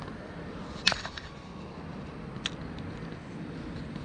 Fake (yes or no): no